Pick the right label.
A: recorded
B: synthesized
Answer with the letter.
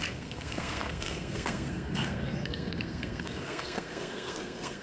B